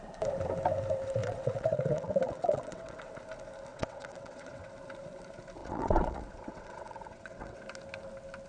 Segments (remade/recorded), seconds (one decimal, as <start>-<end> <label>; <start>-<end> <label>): 0.0-1.2 recorded; 1.2-3.1 remade; 3.1-3.7 recorded; 3.7-4.7 remade; 4.7-5.6 recorded; 5.6-7.6 remade; 7.6-8.5 recorded